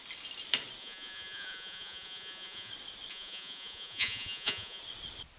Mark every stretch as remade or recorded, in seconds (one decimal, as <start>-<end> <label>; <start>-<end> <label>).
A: 0.0-0.8 recorded; 0.8-2.7 remade; 2.7-3.1 recorded; 3.1-4.8 remade; 4.8-5.4 recorded